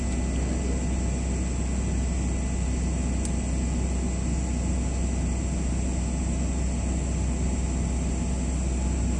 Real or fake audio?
real